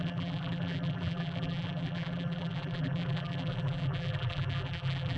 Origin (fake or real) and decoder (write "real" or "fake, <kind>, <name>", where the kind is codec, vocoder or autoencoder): fake, vocoder, BigVGAN v2